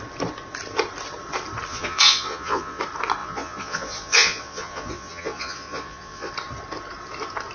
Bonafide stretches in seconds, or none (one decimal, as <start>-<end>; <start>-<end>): 0.0-1.7; 2.8-3.2; 6.3-7.5